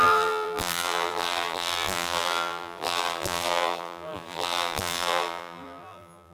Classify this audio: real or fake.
fake